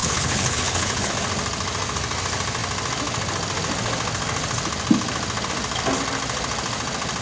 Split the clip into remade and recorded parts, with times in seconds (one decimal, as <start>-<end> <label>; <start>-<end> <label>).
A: 0.0-1.1 remade; 1.1-7.2 recorded